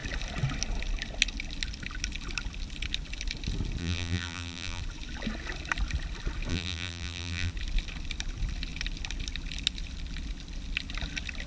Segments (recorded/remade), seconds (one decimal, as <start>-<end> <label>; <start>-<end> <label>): 0.0-3.8 recorded; 3.8-4.8 remade; 4.8-6.5 recorded; 6.5-7.5 remade; 7.5-11.5 recorded